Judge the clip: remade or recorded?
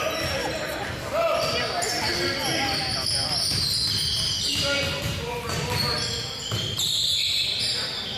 recorded